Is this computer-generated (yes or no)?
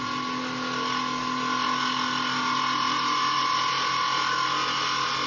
no